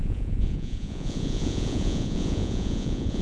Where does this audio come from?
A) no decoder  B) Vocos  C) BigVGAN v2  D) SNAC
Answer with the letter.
B